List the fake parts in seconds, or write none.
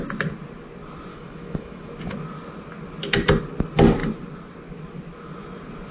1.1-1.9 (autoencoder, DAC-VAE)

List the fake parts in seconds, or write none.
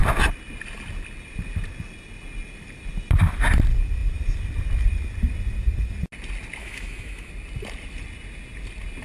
6.6-7.3 (autoencoder, DAC-VAE)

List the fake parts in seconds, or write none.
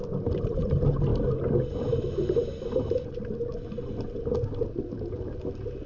none